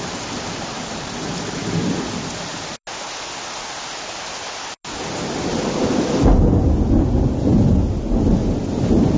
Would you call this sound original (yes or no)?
yes